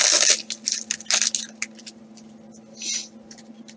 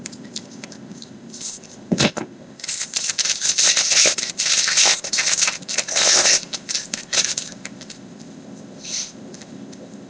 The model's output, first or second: second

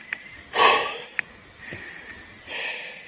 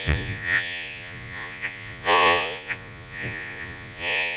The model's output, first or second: second